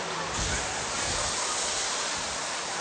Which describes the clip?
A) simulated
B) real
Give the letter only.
B